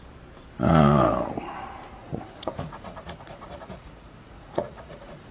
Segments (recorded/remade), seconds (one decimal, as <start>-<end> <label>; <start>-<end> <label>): 0.0-0.7 recorded; 0.7-1.3 remade; 1.3-2.0 recorded; 2.0-5.3 remade